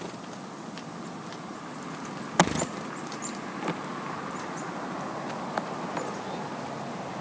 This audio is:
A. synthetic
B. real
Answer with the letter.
B